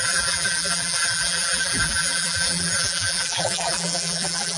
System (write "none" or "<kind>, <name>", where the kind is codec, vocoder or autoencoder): vocoder, BigVGAN v2